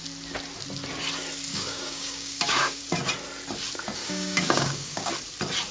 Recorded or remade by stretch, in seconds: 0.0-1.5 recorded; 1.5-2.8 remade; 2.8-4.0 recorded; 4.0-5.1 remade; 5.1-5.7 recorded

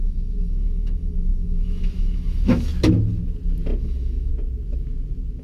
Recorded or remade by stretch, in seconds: 0.0-2.7 remade; 2.7-3.8 recorded; 3.8-4.3 remade; 4.3-5.4 recorded